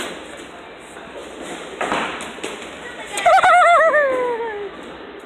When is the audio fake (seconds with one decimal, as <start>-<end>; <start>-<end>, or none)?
none